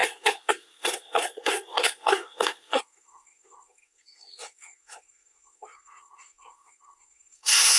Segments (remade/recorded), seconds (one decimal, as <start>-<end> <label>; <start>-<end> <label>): 0.0-7.8 remade